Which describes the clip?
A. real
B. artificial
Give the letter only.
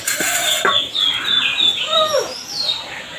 A